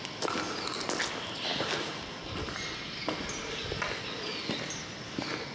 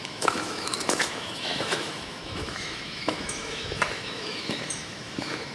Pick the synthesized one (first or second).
second